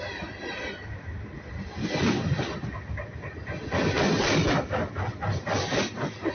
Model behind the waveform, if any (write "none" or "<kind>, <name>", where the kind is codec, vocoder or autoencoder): none